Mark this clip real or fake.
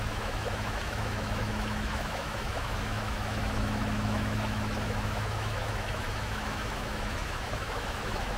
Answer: fake